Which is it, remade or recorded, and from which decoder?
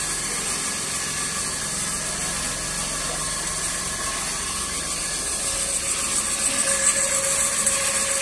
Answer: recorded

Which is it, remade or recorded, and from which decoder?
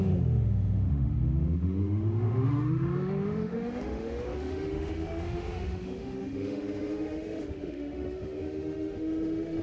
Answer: remade, autoencoder, DAC-VAE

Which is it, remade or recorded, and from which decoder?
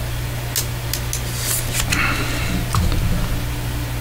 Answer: recorded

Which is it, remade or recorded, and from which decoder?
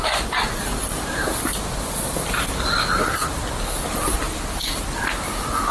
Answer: recorded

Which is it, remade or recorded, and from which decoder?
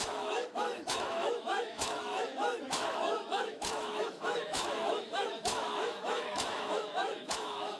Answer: remade, autoencoder, DAC-VAE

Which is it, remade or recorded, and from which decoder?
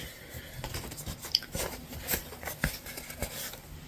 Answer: recorded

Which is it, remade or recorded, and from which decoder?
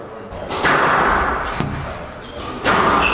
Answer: recorded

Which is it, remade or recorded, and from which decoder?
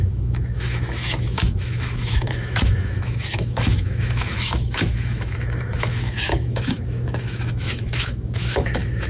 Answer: remade, autoencoder, DAC-VAE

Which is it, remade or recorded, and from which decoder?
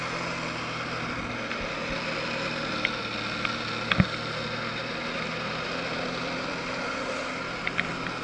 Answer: recorded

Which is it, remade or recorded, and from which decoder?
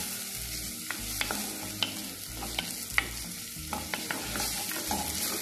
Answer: recorded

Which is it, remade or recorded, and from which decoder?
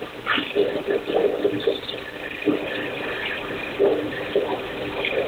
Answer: recorded